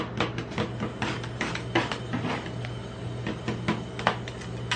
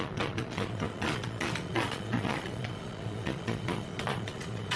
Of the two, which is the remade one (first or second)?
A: second